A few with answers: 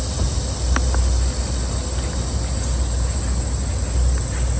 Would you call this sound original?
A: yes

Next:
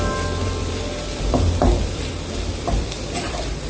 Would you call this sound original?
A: no